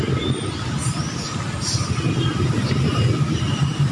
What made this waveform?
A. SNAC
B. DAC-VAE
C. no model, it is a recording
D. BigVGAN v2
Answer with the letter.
C